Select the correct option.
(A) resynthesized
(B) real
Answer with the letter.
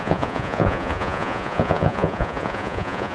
A